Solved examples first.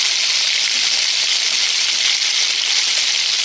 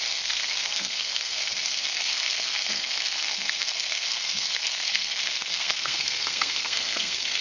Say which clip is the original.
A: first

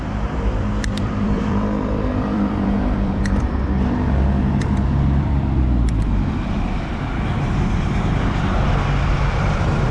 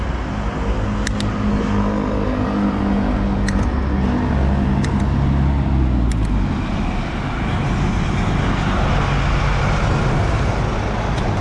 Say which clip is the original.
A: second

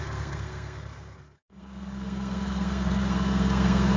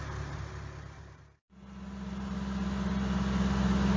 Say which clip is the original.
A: second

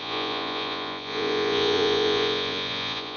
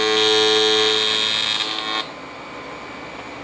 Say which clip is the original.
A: second